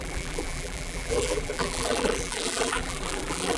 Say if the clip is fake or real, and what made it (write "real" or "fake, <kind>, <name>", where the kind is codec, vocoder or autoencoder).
fake, vocoder, BigVGAN v2